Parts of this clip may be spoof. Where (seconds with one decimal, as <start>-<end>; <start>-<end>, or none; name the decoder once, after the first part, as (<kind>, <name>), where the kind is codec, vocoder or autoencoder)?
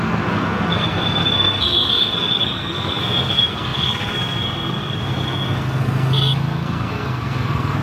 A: 0.0-7.8 (codec, SNAC)